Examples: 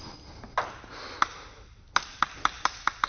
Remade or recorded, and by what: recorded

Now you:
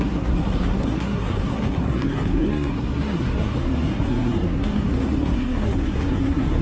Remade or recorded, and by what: remade, codec, SNAC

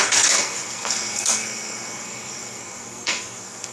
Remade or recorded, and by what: remade, codec, SNAC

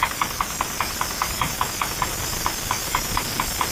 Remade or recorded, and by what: recorded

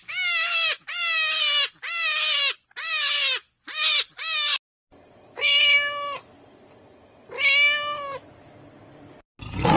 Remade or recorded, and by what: recorded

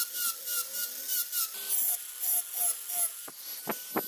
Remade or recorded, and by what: recorded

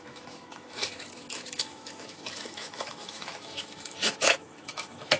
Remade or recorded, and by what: remade, autoencoder, DAC-VAE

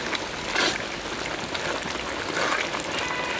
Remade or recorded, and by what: recorded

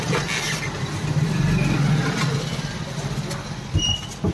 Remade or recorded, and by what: recorded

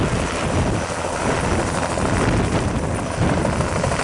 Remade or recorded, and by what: recorded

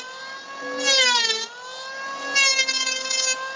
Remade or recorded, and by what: recorded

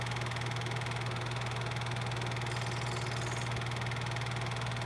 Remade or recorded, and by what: recorded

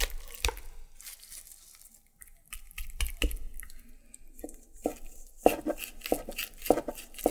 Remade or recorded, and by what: recorded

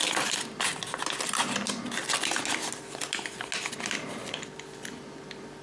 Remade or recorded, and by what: recorded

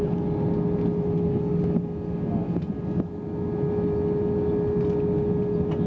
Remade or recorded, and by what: recorded